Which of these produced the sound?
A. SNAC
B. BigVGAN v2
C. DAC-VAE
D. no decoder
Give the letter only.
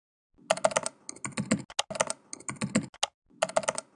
D